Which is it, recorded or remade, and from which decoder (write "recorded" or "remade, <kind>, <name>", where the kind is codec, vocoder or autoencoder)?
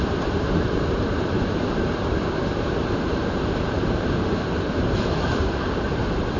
remade, vocoder, BigVGAN v2